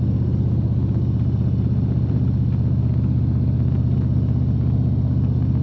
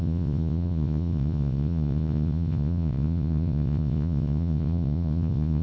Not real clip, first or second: second